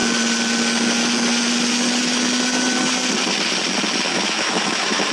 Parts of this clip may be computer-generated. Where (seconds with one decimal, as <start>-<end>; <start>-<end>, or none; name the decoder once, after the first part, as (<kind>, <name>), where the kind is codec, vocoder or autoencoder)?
4.1-5.1 (autoencoder, DAC-VAE)